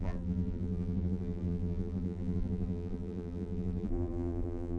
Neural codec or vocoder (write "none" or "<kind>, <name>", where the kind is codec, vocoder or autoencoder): vocoder, BigVGAN v2